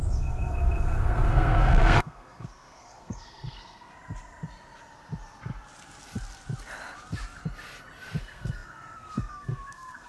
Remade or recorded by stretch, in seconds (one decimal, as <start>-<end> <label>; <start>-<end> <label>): 0.0-3.9 remade; 3.9-8.2 recorded; 8.2-10.1 remade